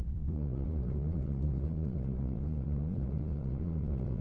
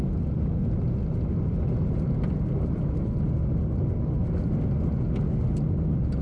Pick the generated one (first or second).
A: first